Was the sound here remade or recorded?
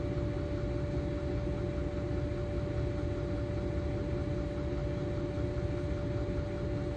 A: recorded